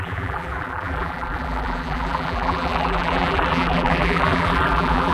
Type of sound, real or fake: fake